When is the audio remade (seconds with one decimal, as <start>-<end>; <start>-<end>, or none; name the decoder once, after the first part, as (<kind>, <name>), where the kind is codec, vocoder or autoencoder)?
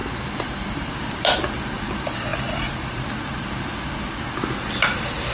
0.0-0.9 (vocoder, BigVGAN v2)